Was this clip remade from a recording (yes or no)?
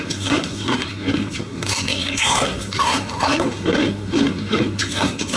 yes